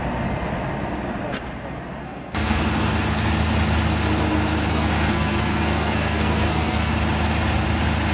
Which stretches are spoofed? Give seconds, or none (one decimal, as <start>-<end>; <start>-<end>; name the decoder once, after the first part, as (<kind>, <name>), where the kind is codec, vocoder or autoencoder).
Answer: 2.0-2.6 (codec, SNAC); 4.7-6.9